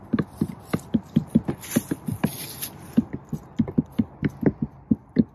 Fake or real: real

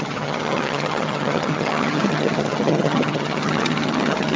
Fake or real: fake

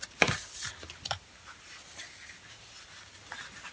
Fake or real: real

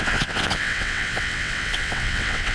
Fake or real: fake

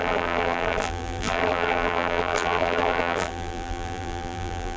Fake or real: fake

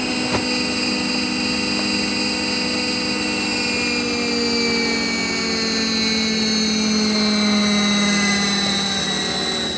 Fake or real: real